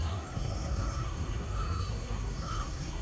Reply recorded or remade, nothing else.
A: remade